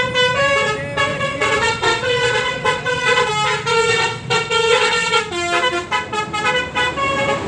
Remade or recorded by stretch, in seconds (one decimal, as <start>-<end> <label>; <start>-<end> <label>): 0.0-1.1 recorded; 1.1-3.3 remade; 3.3-3.7 recorded; 3.7-5.2 remade; 5.2-7.5 recorded